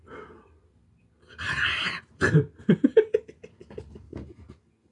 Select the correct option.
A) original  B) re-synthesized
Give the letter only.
A